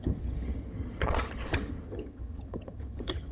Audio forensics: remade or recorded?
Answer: remade